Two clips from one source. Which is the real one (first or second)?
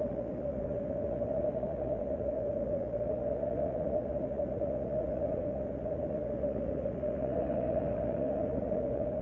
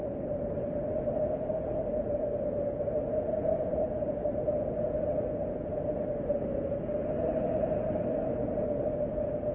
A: second